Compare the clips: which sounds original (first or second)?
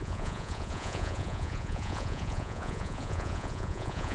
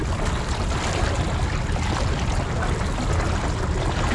second